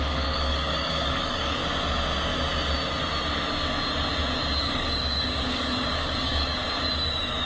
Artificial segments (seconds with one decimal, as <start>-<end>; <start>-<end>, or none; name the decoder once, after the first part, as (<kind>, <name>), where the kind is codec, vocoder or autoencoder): 0.0-1.6 (codec, DAC); 4.6-6.6